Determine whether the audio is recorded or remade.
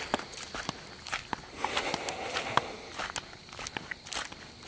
recorded